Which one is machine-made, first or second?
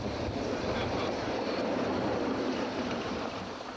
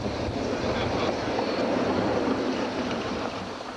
first